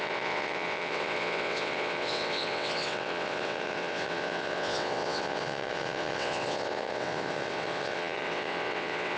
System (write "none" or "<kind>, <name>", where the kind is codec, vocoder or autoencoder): vocoder, WaveNeXt